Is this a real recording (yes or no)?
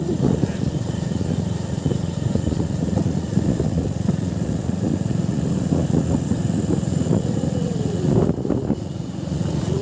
no